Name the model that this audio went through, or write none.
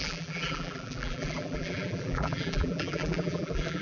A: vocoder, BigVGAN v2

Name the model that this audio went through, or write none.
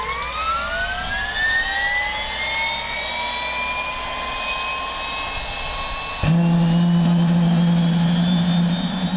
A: none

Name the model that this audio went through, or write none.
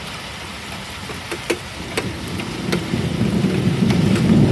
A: vocoder, BigVGAN v2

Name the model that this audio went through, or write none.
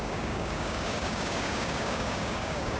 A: codec, DAC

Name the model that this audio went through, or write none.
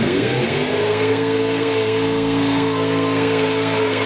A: codec, SNAC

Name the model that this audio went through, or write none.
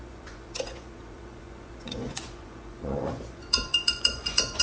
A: vocoder, Vocos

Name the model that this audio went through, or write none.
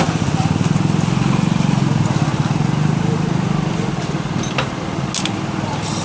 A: none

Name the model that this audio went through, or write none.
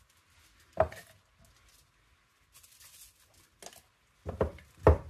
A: none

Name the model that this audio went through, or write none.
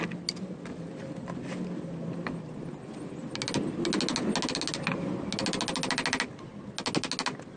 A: none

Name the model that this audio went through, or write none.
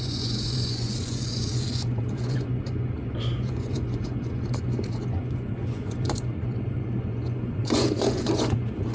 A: vocoder, Vocos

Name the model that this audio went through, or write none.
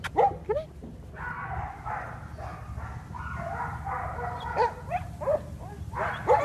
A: none